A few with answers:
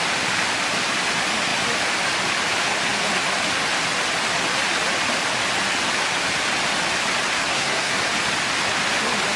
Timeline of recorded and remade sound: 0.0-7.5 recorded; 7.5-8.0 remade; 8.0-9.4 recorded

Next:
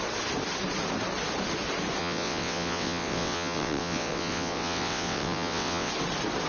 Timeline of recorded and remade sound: 0.0-2.0 recorded; 2.0-5.9 remade; 5.9-6.5 recorded

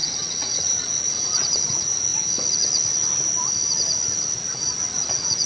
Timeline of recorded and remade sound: 0.0-2.1 remade; 2.1-4.4 recorded; 4.4-5.5 remade

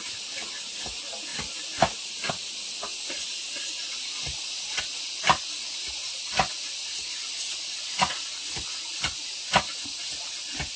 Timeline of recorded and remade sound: 0.0-2.9 recorded; 2.9-4.8 remade; 4.8-6.9 recorded; 6.9-9.2 remade; 9.2-10.8 recorded

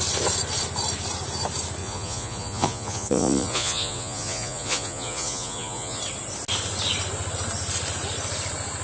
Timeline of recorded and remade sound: 0.0-1.8 recorded; 1.8-6.0 remade; 6.0-8.8 recorded